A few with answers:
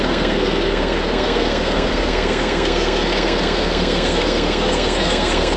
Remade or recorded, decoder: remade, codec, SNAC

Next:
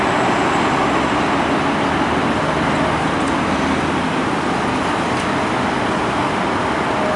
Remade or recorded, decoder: recorded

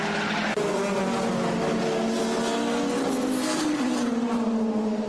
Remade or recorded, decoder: recorded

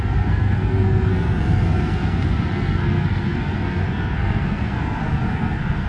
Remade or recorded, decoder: remade, codec, SNAC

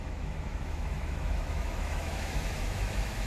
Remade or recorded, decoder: remade, autoencoder, DAC-VAE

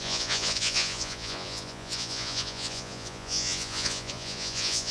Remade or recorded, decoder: remade, vocoder, Vocos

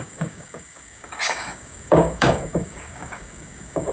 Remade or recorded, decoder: remade, codec, DAC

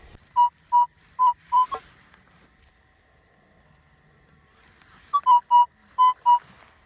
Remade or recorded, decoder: recorded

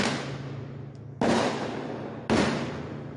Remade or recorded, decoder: recorded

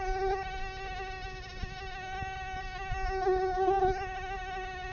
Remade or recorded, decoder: recorded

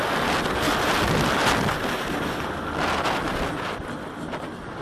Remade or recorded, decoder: recorded